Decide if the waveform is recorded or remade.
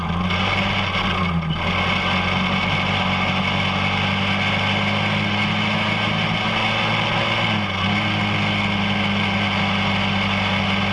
recorded